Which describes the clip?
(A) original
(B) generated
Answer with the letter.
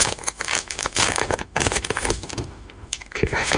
B